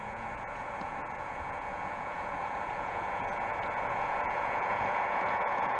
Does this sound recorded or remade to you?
remade